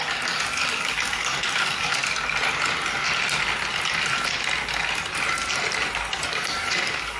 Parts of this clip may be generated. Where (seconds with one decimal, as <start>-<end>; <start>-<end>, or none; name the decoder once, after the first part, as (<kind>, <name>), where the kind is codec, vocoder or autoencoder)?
0.0-2.0 (codec, DAC); 6.3-7.2